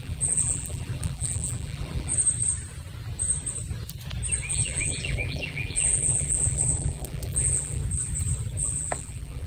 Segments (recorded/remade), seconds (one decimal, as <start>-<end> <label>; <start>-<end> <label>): 0.0-2.1 remade; 2.1-4.5 recorded; 4.5-7.8 remade; 7.8-8.6 recorded; 8.6-9.5 remade

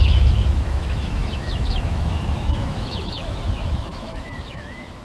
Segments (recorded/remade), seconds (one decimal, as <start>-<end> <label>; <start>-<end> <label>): 0.0-5.0 remade

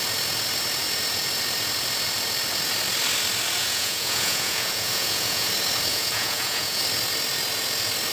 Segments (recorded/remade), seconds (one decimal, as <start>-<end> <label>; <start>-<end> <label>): 0.0-3.6 recorded; 3.6-5.5 remade; 5.5-5.9 recorded; 5.9-6.8 remade; 6.8-8.1 recorded

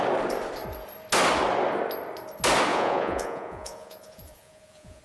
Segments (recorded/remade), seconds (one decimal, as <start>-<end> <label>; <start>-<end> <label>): 0.0-2.7 recorded; 2.7-5.0 remade

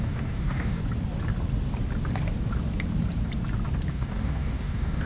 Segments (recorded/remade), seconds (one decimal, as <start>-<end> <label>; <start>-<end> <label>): 0.0-0.8 remade; 0.8-3.9 recorded; 3.9-5.1 remade

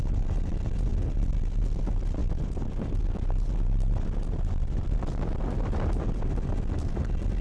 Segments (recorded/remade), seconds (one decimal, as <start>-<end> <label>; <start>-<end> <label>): 0.0-7.4 recorded